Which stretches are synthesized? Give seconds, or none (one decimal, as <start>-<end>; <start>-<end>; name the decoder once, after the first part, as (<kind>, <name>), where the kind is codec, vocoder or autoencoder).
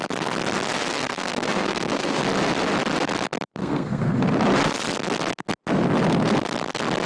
0.9-2.2 (codec, SNAC); 3.6-4.2